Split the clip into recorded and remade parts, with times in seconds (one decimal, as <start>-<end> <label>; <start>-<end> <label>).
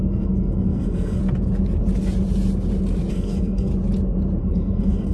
0.0-1.2 remade; 1.2-3.1 recorded; 3.1-3.7 remade; 3.7-4.4 recorded; 4.4-5.1 remade